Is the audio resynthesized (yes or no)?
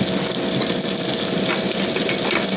no